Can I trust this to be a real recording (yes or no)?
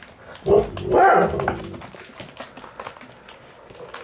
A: yes